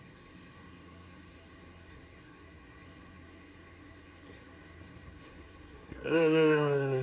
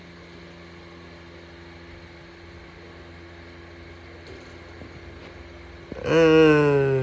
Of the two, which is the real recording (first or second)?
second